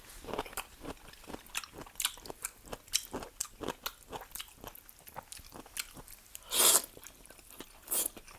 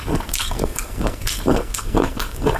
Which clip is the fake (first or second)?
second